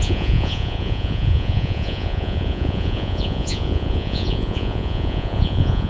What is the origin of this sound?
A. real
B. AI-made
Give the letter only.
B